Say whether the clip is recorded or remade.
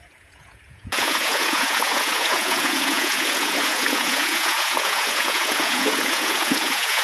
remade